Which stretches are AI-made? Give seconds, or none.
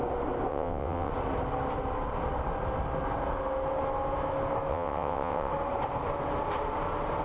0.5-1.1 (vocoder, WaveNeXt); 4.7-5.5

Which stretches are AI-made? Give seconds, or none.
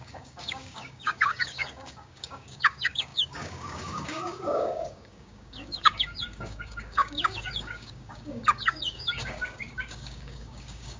0.0-11.0 (codec, DAC)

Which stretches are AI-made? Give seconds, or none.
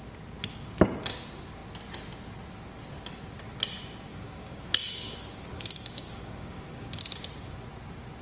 4.1-7.0 (codec, DAC)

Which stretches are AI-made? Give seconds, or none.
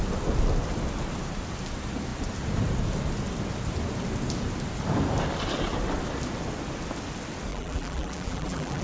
7.5-8.8 (vocoder, BigVGAN v2)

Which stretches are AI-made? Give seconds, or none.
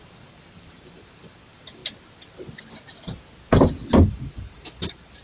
0.0-1.8 (vocoder, BigVGAN v2); 4.1-5.2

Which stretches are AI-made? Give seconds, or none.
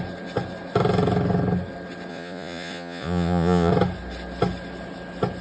2.1-3.7 (vocoder, Vocos)